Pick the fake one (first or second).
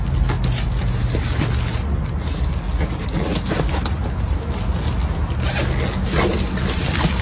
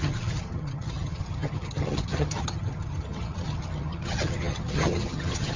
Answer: second